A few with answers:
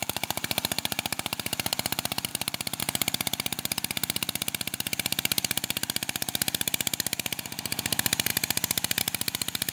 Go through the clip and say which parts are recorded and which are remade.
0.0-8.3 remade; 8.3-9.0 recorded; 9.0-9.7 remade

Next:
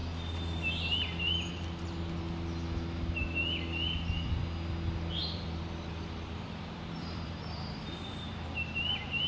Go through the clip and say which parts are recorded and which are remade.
0.0-5.2 recorded; 5.2-8.3 remade; 8.3-9.3 recorded

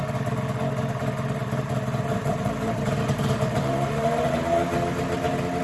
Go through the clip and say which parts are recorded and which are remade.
0.0-1.4 recorded; 1.4-4.2 remade; 4.2-5.6 recorded

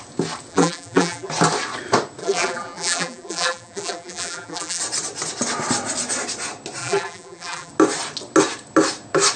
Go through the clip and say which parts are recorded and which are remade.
0.0-0.5 recorded; 0.5-1.3 remade; 1.3-2.2 recorded; 2.2-4.8 remade; 4.8-6.8 recorded; 6.8-7.7 remade; 7.7-9.4 recorded

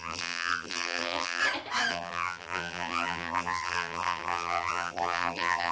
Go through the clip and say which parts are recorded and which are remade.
0.0-1.4 remade; 1.4-1.9 recorded; 1.9-5.7 remade

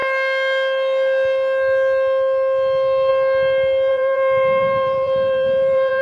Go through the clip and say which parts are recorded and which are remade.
0.0-3.9 recorded; 3.9-6.0 remade

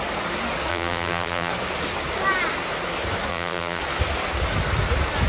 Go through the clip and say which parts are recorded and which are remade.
0.0-0.7 recorded; 0.7-1.5 remade; 1.5-3.3 recorded; 3.3-3.8 remade; 3.8-5.3 recorded